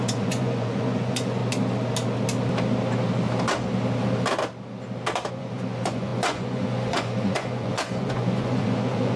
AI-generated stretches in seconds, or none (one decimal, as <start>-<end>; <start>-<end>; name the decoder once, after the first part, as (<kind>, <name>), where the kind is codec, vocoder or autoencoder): 0.0-1.4 (vocoder, Vocos); 5.3-9.2